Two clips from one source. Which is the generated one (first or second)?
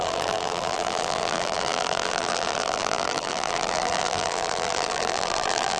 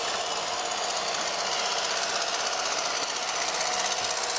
first